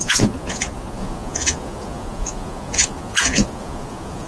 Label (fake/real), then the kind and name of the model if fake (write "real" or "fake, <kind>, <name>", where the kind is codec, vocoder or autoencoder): fake, vocoder, Vocos